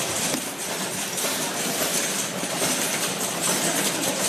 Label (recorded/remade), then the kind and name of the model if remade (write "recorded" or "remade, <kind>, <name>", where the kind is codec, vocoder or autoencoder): recorded